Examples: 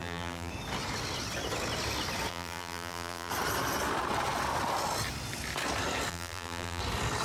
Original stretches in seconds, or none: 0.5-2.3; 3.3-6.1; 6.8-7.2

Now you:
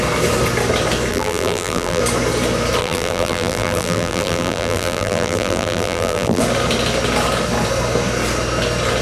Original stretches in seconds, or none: 0.0-1.1; 2.0-2.8; 6.4-9.0

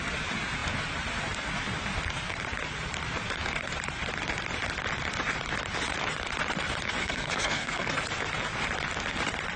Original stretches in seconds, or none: 0.0-7.0; 7.9-9.6

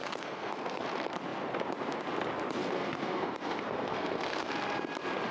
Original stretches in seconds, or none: 0.8-2.6; 4.5-5.3

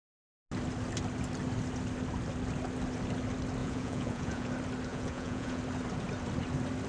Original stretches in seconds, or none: 0.0-3.6; 4.5-4.9; 5.6-6.9

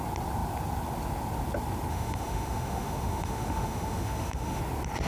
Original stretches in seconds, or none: 0.0-1.9; 4.6-5.1